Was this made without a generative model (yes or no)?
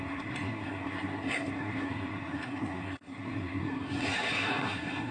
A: no